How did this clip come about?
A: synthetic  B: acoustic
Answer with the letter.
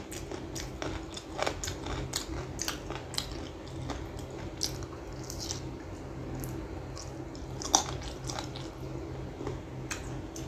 B